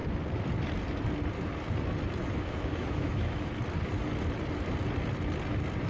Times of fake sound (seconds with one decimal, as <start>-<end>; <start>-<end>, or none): 2.2-3.5